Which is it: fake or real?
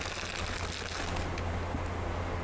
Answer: real